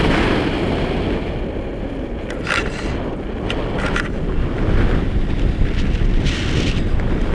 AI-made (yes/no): no